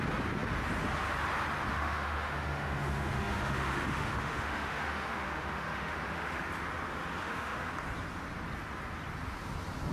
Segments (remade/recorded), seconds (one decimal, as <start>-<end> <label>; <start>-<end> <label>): 0.0-1.7 recorded; 1.7-6.5 remade; 6.5-7.2 recorded; 7.2-7.7 remade; 7.7-9.9 recorded